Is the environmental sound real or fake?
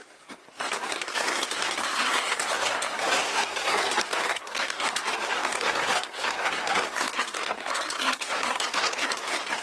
fake